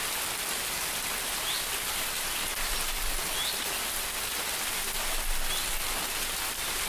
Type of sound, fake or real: real